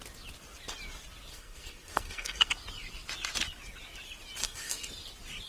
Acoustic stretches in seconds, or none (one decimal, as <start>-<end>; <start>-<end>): 0.0-1.3; 2.5-4.4; 4.9-5.5